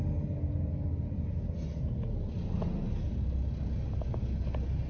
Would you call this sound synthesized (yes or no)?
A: no